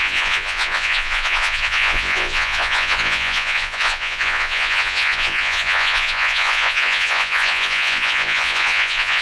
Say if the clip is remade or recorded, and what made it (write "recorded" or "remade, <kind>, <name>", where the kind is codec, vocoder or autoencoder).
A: remade, vocoder, Vocos